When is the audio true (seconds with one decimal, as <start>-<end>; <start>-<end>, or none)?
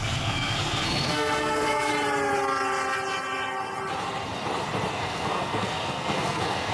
1.9-4.9